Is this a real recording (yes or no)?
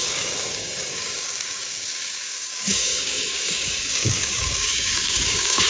no